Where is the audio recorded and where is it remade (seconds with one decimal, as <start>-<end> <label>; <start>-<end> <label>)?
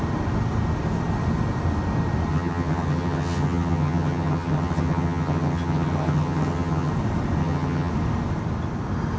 0.0-2.3 recorded; 2.3-6.9 remade; 6.9-7.4 recorded; 7.4-7.9 remade; 7.9-9.2 recorded